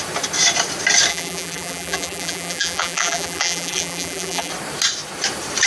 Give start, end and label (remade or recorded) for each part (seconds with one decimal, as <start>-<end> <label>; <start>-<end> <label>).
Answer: 0.0-1.1 recorded; 1.1-4.5 remade; 4.5-5.7 recorded